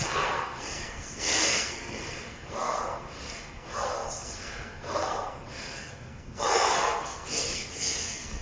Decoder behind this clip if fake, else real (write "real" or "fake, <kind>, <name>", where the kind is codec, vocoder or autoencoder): fake, codec, SNAC